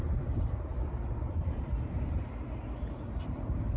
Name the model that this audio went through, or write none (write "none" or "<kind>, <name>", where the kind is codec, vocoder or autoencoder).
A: vocoder, BigVGAN v2